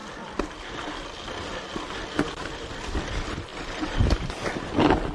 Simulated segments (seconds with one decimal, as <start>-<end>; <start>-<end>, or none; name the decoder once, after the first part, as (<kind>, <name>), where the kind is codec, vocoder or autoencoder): 3.5-4.3 (vocoder, BigVGAN v2)